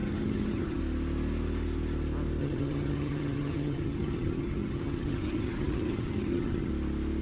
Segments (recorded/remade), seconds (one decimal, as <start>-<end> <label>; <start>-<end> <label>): 0.0-0.8 remade; 0.8-2.4 recorded; 2.4-6.7 remade; 6.7-7.2 recorded